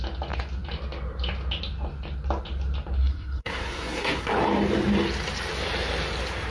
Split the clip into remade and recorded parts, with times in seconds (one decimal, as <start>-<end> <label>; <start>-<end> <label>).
0.0-3.0 recorded; 3.0-4.3 remade; 4.3-6.5 recorded